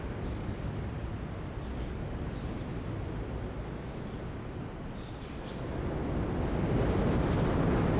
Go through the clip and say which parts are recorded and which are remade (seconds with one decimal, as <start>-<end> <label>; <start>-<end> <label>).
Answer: 0.0-8.0 recorded